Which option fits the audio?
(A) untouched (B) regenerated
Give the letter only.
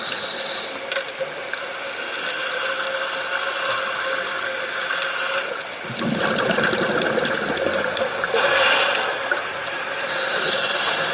A